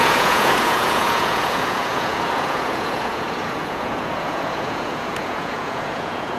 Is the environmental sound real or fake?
fake